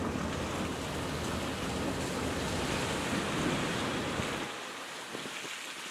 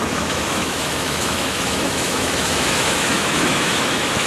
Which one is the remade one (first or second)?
second